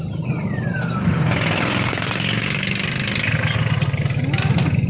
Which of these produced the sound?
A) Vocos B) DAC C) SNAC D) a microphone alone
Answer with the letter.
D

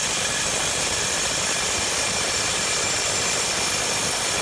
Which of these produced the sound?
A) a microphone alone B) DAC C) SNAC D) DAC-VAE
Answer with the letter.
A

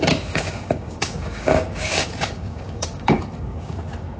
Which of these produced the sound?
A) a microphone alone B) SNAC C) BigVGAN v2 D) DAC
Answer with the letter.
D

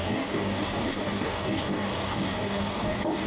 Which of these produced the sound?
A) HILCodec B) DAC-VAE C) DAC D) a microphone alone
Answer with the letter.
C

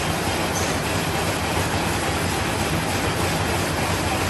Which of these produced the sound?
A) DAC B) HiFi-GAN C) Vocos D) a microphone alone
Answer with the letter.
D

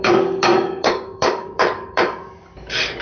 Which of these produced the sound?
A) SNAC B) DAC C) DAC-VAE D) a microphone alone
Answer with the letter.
B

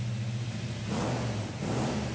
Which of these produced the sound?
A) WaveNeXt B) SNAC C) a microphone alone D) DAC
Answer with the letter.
C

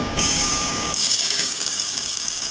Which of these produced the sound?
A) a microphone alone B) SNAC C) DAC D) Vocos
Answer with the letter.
C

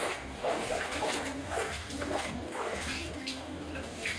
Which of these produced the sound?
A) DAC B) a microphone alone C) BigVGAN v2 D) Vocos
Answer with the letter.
A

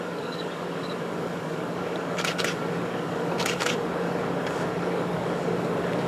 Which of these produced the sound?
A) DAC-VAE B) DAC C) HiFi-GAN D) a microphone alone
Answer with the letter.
B